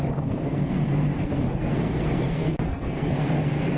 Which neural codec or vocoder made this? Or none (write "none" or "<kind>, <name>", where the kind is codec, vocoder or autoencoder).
codec, SNAC